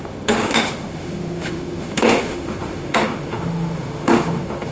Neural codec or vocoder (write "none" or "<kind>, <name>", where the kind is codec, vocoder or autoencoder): autoencoder, DAC-VAE